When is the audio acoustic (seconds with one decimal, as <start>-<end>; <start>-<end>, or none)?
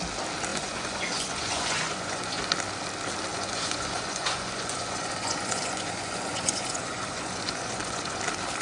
0.0-0.5; 2.4-3.3; 8.2-8.6